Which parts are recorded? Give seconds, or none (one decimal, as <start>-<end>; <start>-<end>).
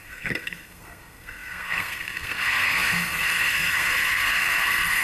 none